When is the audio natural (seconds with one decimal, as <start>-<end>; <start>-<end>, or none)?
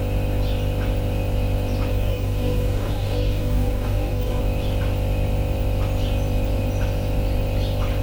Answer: 0.0-1.9; 4.4-8.0